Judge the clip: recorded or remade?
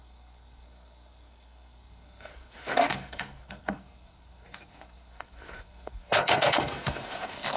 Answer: remade